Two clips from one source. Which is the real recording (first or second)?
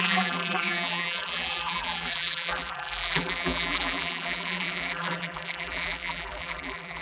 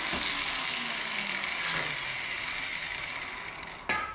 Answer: second